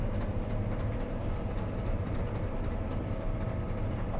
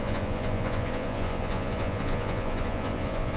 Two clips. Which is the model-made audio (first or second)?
second